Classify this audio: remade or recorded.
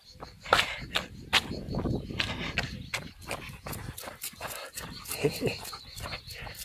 recorded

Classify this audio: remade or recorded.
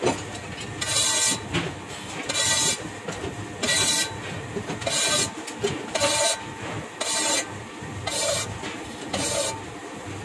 recorded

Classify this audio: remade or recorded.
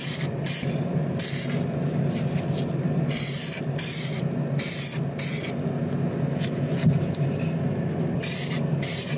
recorded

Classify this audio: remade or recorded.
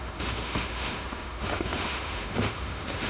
remade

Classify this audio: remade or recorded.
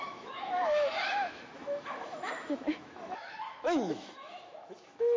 remade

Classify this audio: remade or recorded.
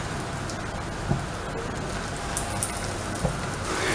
recorded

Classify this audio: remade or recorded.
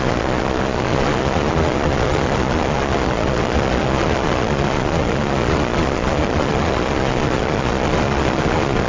remade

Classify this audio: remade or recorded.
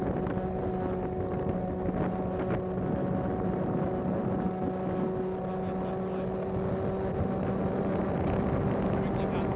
recorded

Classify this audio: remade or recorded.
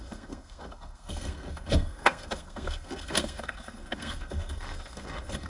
remade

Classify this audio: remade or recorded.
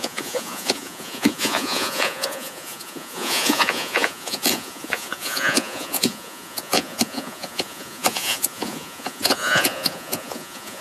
remade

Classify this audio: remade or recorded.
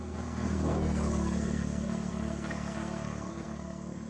remade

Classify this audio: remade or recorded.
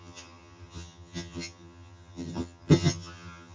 remade